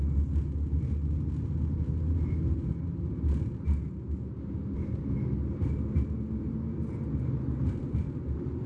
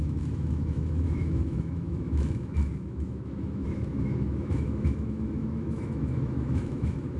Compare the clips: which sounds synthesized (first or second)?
second